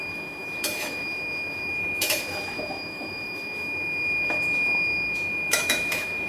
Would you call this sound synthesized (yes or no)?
yes